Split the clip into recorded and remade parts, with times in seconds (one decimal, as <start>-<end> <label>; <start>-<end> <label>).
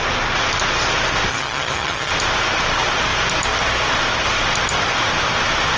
0.0-1.3 recorded; 1.3-2.1 remade; 2.1-5.8 recorded